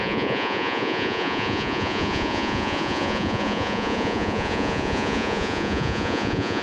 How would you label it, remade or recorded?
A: remade